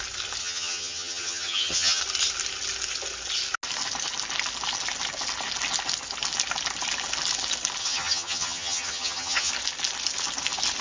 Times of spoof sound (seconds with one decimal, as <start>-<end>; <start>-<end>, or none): 0.4-2.0; 7.8-9.5